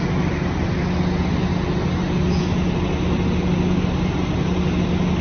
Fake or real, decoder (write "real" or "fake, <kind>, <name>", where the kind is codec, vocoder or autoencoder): real